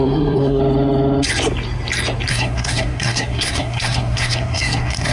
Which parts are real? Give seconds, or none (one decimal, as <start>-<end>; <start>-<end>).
0.6-2.3